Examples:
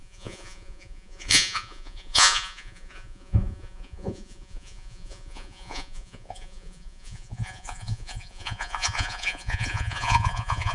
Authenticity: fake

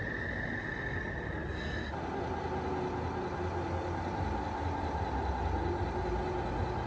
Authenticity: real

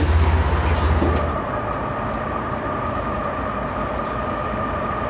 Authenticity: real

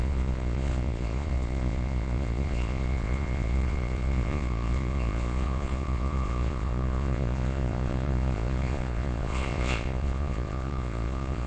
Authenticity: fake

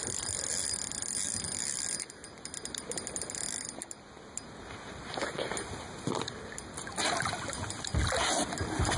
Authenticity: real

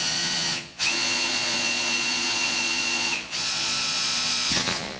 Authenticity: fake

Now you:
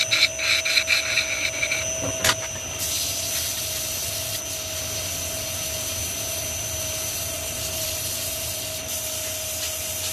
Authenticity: real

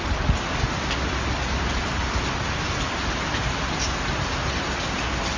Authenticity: real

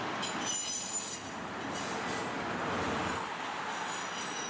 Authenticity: real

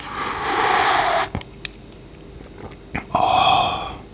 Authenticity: real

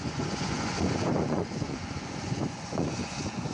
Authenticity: fake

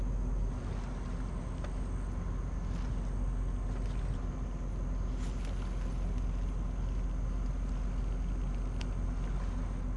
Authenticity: real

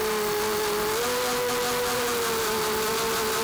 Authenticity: real